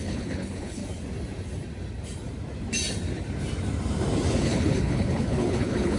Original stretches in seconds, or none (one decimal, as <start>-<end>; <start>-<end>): 0.8-4.4